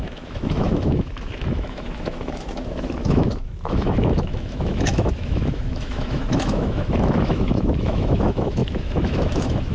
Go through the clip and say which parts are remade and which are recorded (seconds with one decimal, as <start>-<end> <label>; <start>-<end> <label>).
0.0-9.7 remade